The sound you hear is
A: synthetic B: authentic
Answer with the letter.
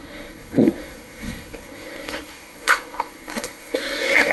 A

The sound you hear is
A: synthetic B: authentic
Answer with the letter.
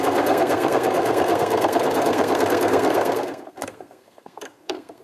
A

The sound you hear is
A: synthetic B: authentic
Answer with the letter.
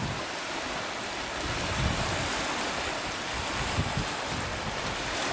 B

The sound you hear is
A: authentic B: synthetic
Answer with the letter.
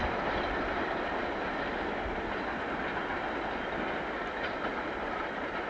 A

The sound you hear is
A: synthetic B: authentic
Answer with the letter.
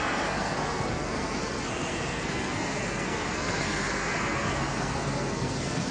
A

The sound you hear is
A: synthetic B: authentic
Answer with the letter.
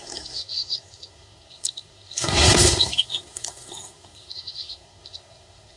A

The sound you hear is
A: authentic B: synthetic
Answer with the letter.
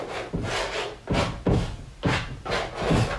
A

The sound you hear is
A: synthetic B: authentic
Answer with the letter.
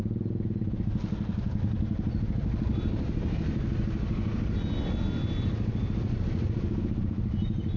B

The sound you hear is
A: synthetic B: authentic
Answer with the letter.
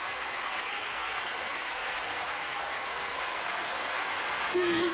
A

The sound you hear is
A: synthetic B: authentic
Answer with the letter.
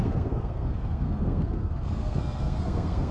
A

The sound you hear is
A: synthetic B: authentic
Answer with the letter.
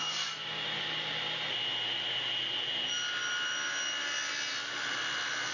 B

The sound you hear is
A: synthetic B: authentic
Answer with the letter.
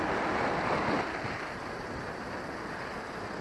B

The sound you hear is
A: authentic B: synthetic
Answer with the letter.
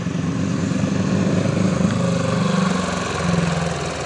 A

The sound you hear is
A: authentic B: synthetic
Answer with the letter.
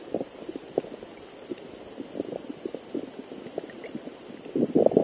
A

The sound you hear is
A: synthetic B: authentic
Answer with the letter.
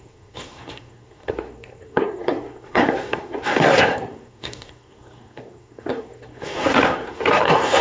A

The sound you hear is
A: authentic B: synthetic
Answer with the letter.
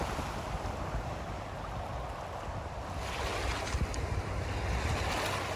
A